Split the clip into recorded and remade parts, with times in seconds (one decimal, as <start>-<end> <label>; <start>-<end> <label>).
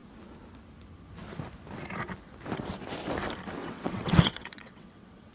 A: 0.0-3.6 recorded; 3.6-5.3 remade